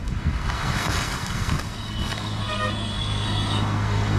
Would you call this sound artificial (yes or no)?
yes